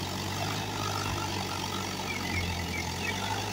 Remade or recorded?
recorded